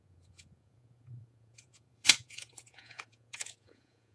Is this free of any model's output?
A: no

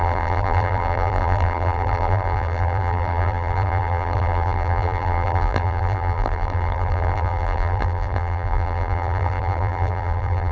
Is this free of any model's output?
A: no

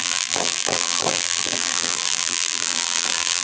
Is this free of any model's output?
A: no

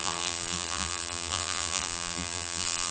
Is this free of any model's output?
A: no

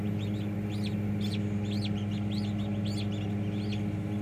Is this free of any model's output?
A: yes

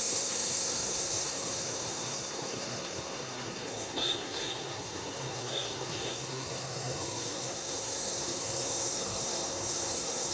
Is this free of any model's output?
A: no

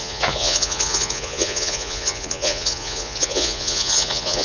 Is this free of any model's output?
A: no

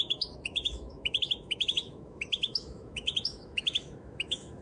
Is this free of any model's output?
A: no